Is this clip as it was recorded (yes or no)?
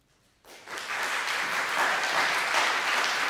yes